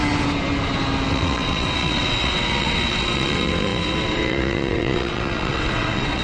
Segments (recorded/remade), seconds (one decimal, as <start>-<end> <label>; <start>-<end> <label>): 0.0-1.1 recorded; 1.1-6.2 remade